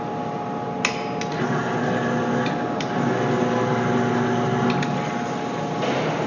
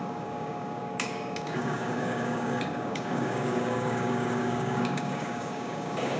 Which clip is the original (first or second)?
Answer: first